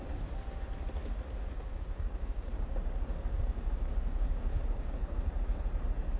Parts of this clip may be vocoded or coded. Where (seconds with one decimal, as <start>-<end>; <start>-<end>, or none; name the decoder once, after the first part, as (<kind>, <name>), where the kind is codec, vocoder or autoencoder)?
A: 1.7-5.4 (codec, DAC)